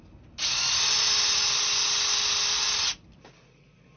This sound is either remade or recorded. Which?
recorded